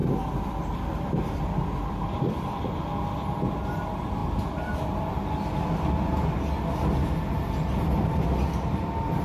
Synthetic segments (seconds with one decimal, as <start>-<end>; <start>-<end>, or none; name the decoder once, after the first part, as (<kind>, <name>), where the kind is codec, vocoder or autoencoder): 0.0-2.8 (vocoder, BigVGAN v2); 4.2-5.1